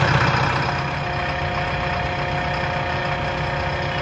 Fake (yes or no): no